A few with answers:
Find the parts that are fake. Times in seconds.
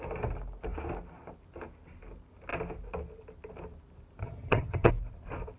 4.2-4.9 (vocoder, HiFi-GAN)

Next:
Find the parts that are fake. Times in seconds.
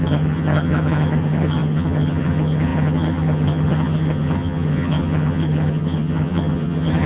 0.0-7.1 (vocoder, HiFi-GAN)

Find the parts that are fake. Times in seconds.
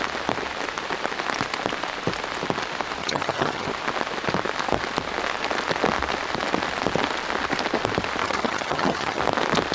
3.0-3.7 (vocoder, HiFi-GAN); 8.2-9.2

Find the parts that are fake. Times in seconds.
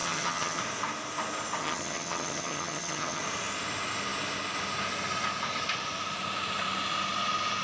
0.0-0.6 (vocoder, HiFi-GAN); 1.6-3.2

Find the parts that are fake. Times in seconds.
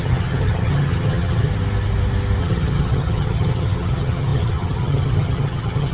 0.0-1.5 (vocoder, HiFi-GAN); 2.4-5.9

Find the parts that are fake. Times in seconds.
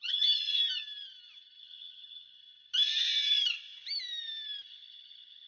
0.0-0.6 (vocoder, HiFi-GAN); 1.6-2.4; 4.7-5.5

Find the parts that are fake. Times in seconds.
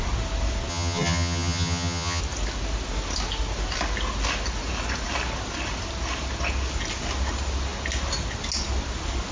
0.7-2.2 (vocoder, HiFi-GAN)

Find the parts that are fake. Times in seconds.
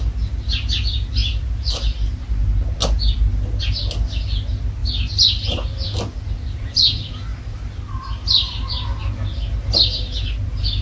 none